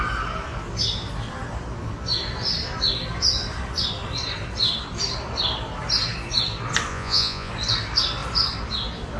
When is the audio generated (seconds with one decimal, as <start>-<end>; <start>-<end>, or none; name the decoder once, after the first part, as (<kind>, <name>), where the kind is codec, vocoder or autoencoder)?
6.9-7.5 (vocoder, Vocos)